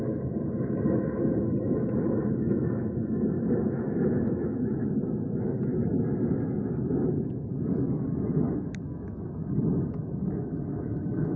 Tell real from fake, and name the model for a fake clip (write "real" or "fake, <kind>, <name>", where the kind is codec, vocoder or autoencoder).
fake, autoencoder, DAC-VAE